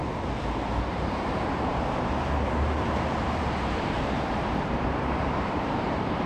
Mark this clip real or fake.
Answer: fake